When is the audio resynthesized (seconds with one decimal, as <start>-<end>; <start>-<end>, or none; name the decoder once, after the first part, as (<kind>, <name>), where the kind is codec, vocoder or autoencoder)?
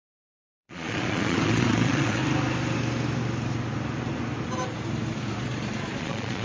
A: 0.0-2.2 (vocoder, Vocos); 6.0-6.4